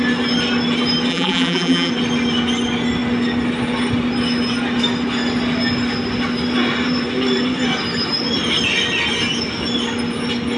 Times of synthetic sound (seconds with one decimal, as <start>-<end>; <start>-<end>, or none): 1.1-1.9